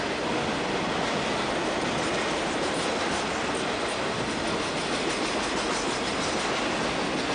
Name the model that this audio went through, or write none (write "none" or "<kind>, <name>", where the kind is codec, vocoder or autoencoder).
none